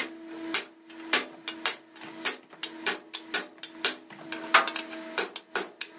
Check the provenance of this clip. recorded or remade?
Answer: recorded